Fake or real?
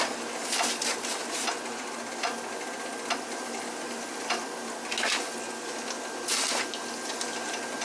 real